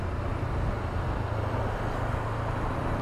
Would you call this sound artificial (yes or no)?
no